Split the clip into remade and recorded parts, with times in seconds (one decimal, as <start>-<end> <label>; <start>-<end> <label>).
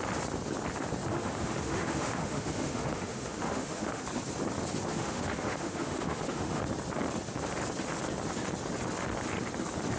0.0-1.1 recorded; 1.1-4.0 remade; 4.0-4.9 recorded; 4.9-6.6 remade; 6.6-10.0 recorded